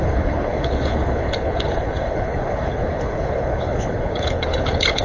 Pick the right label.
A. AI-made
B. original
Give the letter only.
A